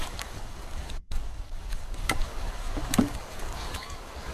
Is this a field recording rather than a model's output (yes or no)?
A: no